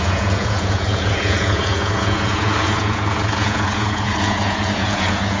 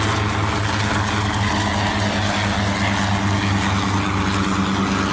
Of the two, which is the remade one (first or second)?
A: first